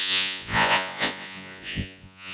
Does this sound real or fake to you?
fake